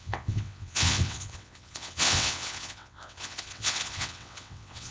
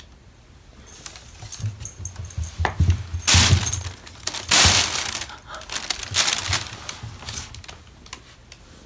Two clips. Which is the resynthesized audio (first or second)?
first